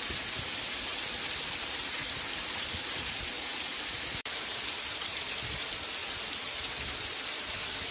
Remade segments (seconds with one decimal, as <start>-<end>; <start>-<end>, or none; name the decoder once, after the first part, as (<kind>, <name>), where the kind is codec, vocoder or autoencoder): 0.0-0.9 (vocoder, BigVGAN v2); 1.6-6.0; 6.6-7.9